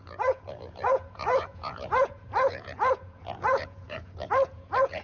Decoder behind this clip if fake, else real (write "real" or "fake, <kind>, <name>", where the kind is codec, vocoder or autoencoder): fake, vocoder, Vocos